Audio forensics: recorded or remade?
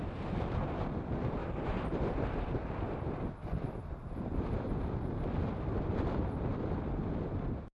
recorded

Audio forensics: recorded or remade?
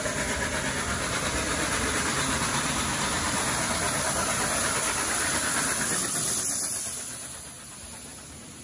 recorded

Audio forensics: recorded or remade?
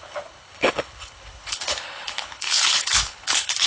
remade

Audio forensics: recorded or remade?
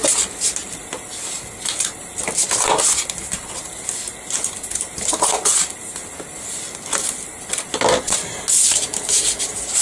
recorded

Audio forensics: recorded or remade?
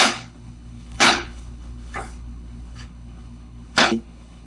remade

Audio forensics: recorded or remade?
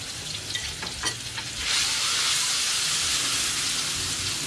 recorded